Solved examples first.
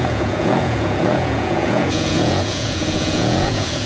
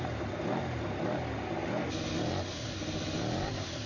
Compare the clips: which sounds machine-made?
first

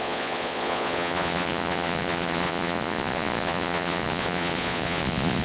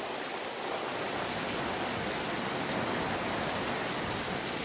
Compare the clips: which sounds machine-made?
first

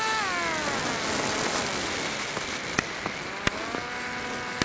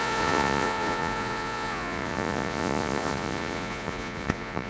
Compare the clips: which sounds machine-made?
second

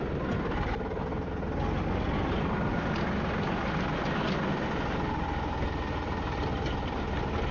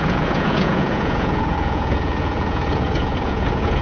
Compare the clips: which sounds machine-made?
second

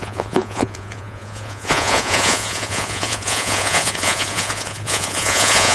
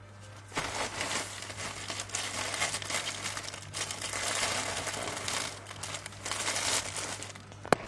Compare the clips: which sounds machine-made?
first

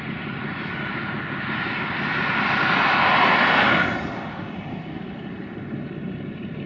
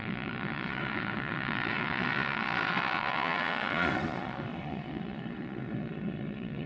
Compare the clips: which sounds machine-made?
second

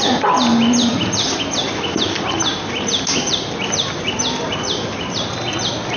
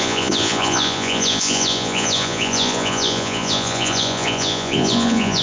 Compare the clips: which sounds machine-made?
second